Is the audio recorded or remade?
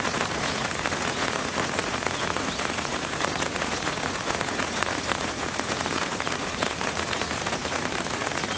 remade